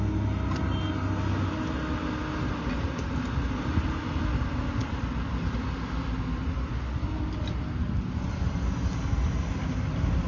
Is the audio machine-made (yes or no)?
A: no